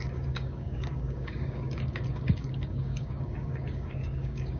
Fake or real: fake